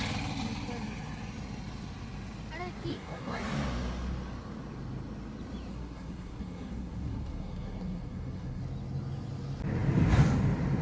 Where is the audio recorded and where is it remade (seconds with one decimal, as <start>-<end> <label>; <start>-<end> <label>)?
0.0-2.9 recorded; 2.9-3.4 remade; 3.4-5.7 recorded; 5.7-8.6 remade; 8.6-10.8 recorded